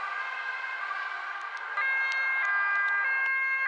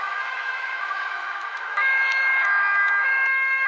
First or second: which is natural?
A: first